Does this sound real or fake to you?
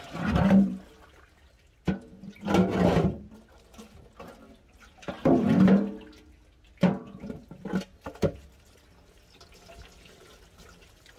real